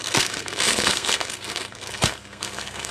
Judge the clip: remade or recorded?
remade